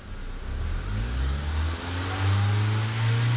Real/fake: real